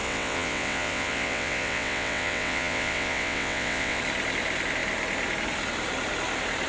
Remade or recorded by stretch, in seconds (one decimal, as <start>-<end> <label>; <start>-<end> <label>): 0.0-4.0 remade; 4.0-6.7 recorded